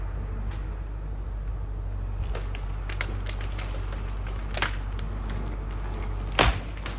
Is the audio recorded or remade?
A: recorded